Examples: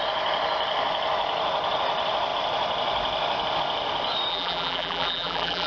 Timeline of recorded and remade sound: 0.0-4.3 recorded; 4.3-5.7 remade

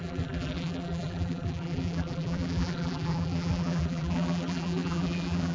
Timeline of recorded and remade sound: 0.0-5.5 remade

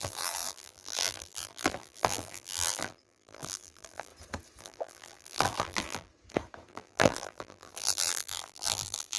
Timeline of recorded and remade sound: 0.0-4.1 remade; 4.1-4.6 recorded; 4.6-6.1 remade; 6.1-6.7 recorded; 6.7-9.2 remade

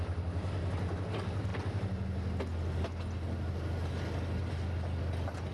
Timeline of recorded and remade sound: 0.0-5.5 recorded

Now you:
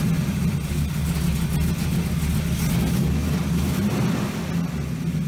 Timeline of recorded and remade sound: 0.0-3.2 recorded; 3.2-4.0 remade; 4.0-5.3 recorded

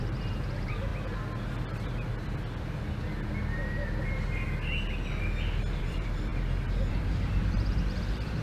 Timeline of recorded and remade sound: 0.0-0.9 remade; 0.9-5.8 recorded; 5.8-6.3 remade; 6.3-6.9 recorded; 6.9-8.4 remade

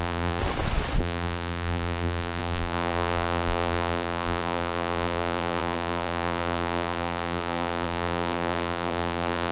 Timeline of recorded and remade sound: 0.0-0.4 remade; 0.4-1.0 recorded; 1.0-9.5 remade

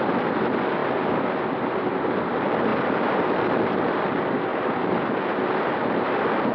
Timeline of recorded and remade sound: 0.0-0.8 remade; 0.8-1.8 recorded; 1.8-4.5 remade; 4.5-5.6 recorded; 5.6-6.5 remade